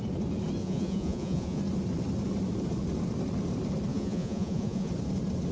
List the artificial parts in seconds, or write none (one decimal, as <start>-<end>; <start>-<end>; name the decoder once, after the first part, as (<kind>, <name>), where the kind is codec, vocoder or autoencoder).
0.6-1.6 (vocoder, Vocos); 3.9-4.9